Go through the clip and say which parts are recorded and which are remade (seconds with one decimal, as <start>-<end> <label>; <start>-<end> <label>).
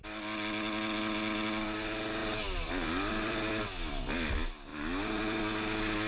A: 0.0-2.2 recorded; 2.2-4.0 remade; 4.0-4.7 recorded; 4.7-5.4 remade; 5.4-6.1 recorded